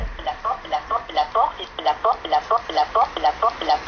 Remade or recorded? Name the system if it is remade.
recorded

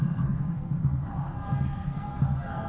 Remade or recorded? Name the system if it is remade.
remade, codec, SNAC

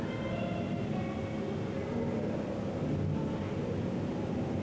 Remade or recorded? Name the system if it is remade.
recorded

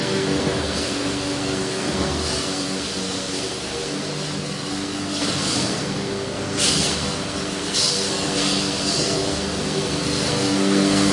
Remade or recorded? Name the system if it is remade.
remade, codec, SNAC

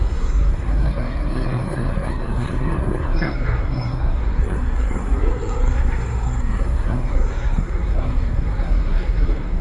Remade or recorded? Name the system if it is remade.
remade, codec, SNAC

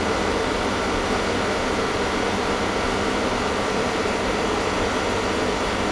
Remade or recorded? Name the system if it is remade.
recorded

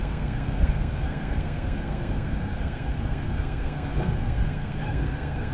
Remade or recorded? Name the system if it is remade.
remade, codec, SNAC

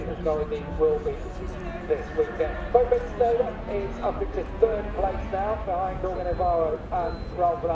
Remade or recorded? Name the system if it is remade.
recorded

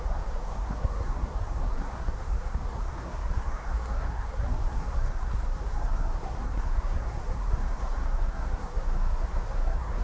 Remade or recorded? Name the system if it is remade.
remade, codec, SNAC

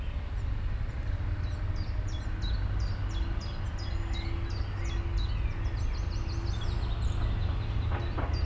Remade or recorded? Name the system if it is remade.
recorded